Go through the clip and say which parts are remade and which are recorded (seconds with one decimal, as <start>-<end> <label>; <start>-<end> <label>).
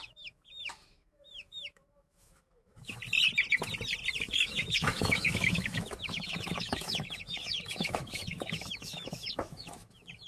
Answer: 0.0-3.0 remade; 3.0-4.2 recorded; 4.2-10.3 remade